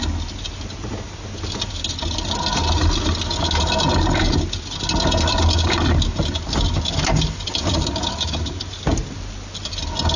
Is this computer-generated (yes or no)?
no